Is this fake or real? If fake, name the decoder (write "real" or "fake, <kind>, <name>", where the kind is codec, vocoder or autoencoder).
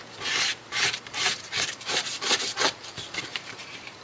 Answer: fake, vocoder, BigVGAN v2